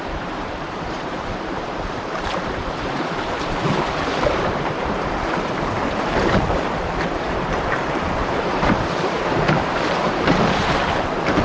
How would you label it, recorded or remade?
remade